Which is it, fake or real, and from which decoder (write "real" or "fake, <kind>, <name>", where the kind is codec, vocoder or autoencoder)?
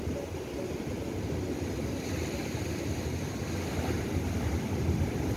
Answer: real